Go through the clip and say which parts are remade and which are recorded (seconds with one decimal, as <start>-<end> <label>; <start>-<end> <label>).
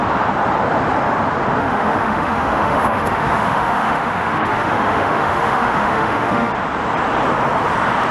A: 0.0-1.6 recorded; 1.6-6.5 remade; 6.5-8.1 recorded